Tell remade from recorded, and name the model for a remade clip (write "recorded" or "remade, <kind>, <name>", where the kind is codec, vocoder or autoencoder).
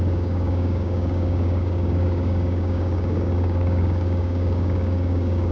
remade, codec, DAC